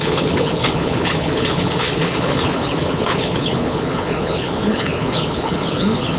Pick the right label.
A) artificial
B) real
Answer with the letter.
A